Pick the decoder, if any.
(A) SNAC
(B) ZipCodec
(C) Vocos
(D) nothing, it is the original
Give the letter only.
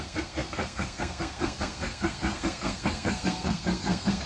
A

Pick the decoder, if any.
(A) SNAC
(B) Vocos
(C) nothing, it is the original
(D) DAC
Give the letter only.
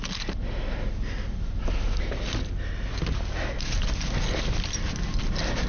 C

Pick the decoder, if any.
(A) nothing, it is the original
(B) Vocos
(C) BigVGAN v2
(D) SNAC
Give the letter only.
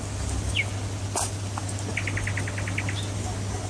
A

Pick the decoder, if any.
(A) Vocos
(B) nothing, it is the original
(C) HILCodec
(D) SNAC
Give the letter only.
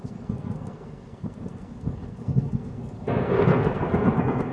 D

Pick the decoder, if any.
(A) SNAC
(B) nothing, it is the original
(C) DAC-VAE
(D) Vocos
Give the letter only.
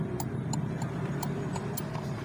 B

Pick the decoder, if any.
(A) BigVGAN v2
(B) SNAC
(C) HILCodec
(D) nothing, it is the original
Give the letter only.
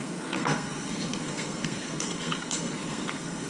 B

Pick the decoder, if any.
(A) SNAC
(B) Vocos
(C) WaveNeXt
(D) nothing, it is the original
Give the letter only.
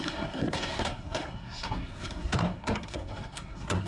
A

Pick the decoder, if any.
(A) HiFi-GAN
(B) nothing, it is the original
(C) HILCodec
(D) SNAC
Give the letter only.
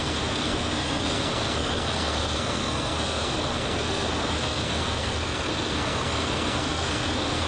D